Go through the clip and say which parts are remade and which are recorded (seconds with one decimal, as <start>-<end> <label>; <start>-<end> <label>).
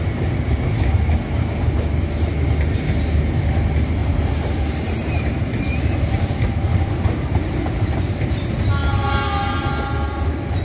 0.0-4.0 recorded; 4.0-8.4 remade; 8.4-10.6 recorded